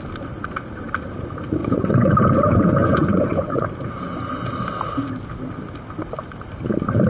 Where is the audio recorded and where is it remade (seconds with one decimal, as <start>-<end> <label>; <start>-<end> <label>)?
0.0-1.6 recorded; 1.6-2.1 remade; 2.1-2.8 recorded; 2.8-3.7 remade; 3.7-7.1 recorded